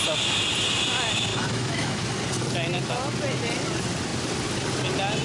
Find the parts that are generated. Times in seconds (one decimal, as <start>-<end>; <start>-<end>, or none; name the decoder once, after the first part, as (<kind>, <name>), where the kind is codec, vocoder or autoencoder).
1.3-2.0 (autoencoder, DAC-VAE)